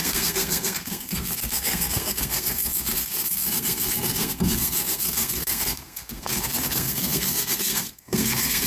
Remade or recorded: remade